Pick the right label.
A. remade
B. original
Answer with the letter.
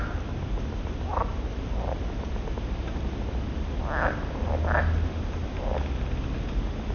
B